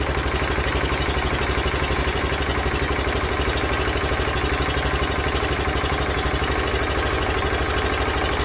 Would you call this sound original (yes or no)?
yes